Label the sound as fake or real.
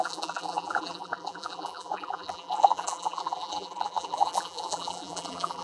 fake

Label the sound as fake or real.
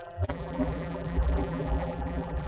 fake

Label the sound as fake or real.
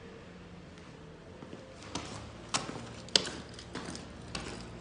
real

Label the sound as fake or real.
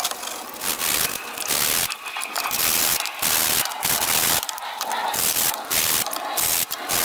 real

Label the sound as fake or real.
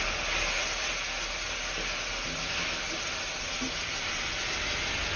real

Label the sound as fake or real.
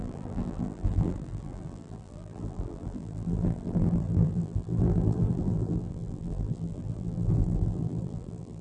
fake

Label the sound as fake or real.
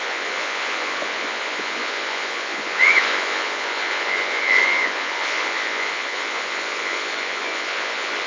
fake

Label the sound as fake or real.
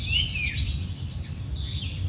real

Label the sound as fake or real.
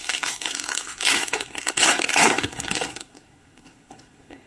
fake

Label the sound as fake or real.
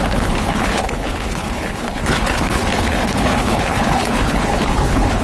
fake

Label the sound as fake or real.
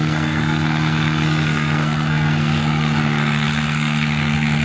fake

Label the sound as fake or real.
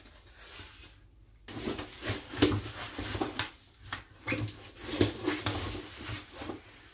real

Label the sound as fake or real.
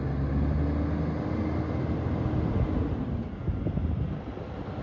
real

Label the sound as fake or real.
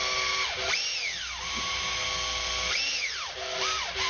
real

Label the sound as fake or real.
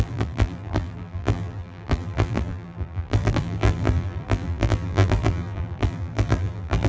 fake